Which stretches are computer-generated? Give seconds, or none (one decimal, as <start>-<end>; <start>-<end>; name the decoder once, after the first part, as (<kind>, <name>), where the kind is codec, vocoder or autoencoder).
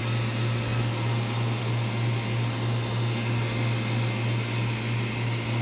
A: none